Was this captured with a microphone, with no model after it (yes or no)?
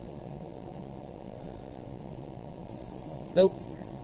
no